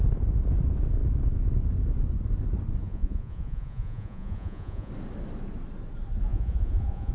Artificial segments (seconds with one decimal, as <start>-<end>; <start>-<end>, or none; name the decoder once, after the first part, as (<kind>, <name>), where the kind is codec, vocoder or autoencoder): 2.8-4.9 (vocoder, Vocos); 6.3-7.1